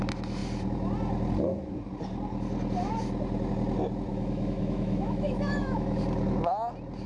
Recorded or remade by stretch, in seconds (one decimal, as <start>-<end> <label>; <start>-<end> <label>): 0.0-4.1 recorded; 4.1-6.0 remade; 6.0-7.1 recorded